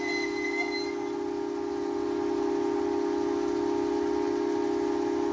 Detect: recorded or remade recorded